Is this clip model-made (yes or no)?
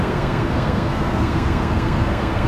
yes